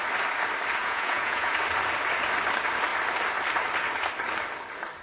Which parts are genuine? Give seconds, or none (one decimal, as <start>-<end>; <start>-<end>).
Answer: 0.0-0.8; 1.5-5.0